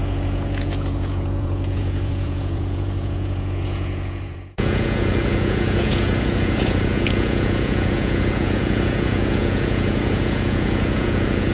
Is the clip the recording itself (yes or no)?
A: no